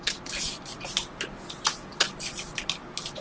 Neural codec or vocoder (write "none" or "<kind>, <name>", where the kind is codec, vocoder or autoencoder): none